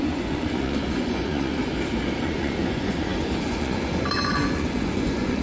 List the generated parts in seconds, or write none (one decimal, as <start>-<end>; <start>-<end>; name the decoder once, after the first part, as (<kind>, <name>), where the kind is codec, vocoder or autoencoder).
0.0-1.6 (vocoder, Vocos); 2.2-5.4